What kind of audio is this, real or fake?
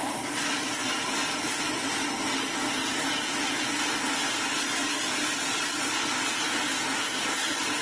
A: real